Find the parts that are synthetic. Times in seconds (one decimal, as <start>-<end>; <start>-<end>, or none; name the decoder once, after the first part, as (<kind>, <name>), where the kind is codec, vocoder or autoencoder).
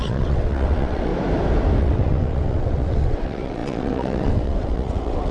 0.0-1.1 (vocoder, WaveNeXt); 1.8-5.3